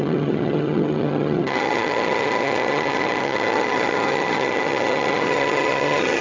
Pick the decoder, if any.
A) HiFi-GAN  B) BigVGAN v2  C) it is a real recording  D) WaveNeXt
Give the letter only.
A